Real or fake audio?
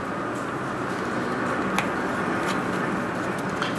real